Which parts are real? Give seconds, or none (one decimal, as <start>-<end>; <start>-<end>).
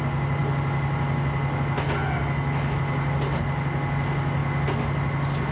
0.0-5.5